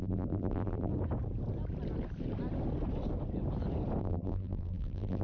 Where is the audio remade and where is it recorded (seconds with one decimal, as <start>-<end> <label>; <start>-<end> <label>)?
0.0-0.9 remade; 0.9-4.0 recorded; 4.0-5.2 remade